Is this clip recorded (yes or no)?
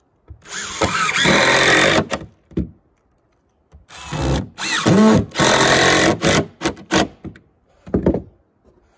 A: yes